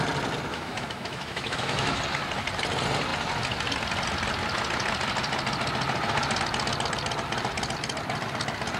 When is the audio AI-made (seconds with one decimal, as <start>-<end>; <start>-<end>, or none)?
0.5-2.0